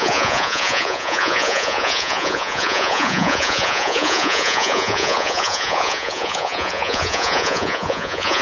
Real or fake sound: fake